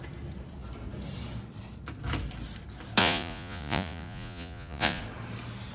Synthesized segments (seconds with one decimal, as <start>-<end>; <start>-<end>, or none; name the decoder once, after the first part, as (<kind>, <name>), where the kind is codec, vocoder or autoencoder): 3.0-5.0 (vocoder, Vocos)